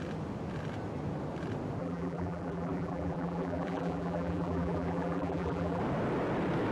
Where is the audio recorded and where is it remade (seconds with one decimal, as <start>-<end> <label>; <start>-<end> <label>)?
0.0-1.8 recorded; 1.8-5.8 remade; 5.8-6.7 recorded